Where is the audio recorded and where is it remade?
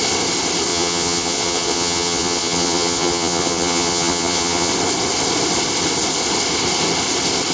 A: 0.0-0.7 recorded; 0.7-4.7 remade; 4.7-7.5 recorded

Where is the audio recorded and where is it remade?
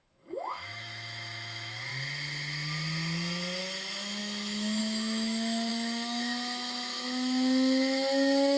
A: 0.0-1.9 remade; 1.9-3.6 recorded; 3.6-8.6 remade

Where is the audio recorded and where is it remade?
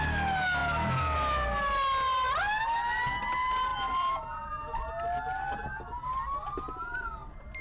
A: 0.0-3.7 recorded; 3.7-4.9 remade; 4.9-7.6 recorded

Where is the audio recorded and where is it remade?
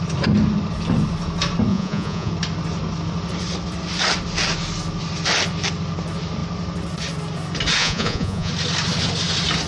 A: 0.0-1.7 recorded; 1.7-2.3 remade; 2.3-7.8 recorded; 7.8-8.5 remade; 8.5-9.7 recorded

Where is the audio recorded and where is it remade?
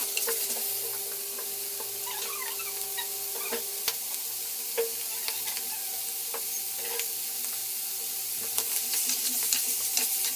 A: 0.0-10.4 recorded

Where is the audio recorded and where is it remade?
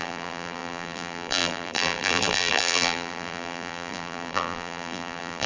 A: 0.0-5.5 remade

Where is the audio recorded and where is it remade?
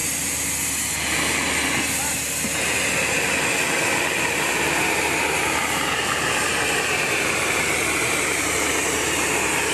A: 0.0-4.2 recorded; 4.2-9.7 remade